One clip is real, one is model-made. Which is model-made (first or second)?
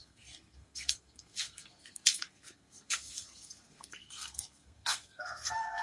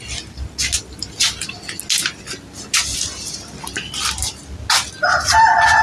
first